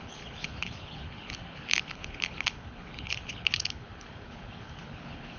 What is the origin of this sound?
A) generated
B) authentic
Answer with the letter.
A